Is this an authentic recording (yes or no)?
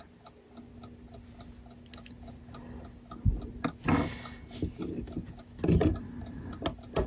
yes